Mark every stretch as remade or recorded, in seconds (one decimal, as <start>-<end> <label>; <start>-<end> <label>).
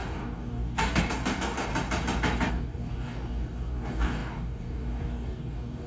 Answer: 0.0-1.7 remade; 1.7-2.5 recorded; 2.5-5.9 remade